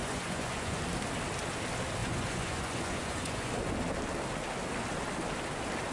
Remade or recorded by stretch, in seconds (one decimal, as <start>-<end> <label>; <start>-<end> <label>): 0.0-0.8 remade; 0.8-2.0 recorded; 2.0-3.5 remade; 3.5-5.9 recorded